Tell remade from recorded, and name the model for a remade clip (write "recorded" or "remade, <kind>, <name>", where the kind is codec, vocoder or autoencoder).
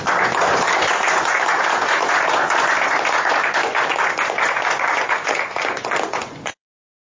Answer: remade, vocoder, Vocos